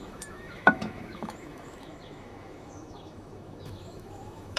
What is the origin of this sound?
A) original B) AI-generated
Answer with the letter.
B